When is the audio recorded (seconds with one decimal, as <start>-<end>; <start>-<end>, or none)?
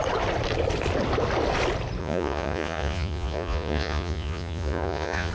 0.0-2.0